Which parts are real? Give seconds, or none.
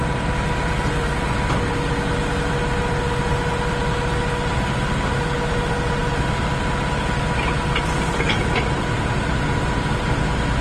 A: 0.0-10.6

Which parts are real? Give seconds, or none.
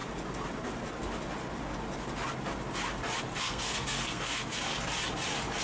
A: 0.0-3.4; 4.7-5.6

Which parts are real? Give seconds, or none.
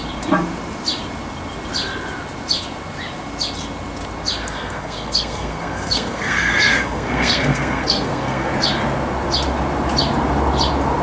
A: 0.0-4.4; 8.5-11.0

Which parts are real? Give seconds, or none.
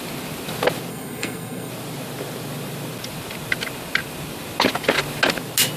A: 0.0-0.9; 1.7-5.8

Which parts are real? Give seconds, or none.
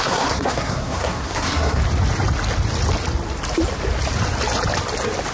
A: 1.8-5.3